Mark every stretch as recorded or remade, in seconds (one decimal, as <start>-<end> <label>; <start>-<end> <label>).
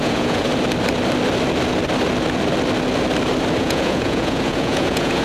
0.0-0.5 remade; 0.5-3.6 recorded; 3.6-5.2 remade